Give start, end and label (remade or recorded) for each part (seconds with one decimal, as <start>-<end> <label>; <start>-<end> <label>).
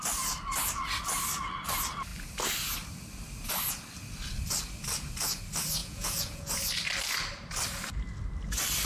0.0-5.8 recorded; 5.8-6.5 remade; 6.5-8.9 recorded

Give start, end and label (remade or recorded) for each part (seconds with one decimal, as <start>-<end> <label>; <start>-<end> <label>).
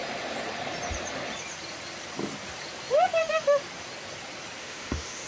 0.0-3.2 recorded; 3.2-3.6 remade; 3.6-4.6 recorded; 4.6-5.3 remade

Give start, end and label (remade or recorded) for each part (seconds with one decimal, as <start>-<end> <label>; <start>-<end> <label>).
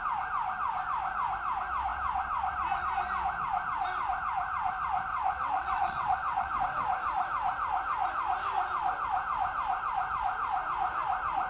0.0-5.1 recorded; 5.1-6.6 remade; 6.6-11.5 recorded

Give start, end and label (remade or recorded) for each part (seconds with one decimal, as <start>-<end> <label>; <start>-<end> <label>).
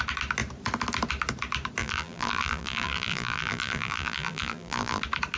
0.0-1.8 recorded; 1.8-5.0 remade; 5.0-5.4 recorded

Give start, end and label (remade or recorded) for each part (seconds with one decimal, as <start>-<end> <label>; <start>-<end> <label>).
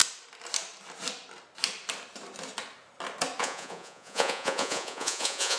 0.0-3.4 recorded; 3.4-5.6 remade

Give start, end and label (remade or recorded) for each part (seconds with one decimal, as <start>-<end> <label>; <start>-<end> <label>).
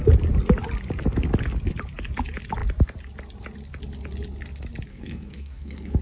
0.0-4.9 recorded; 4.9-6.0 remade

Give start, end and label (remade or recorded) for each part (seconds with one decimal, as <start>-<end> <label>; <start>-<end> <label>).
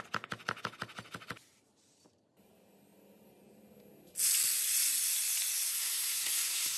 0.0-5.7 recorded; 5.7-6.8 remade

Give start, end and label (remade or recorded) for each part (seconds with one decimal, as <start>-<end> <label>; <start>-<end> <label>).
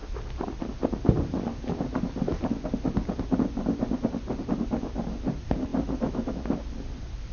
0.0-7.3 recorded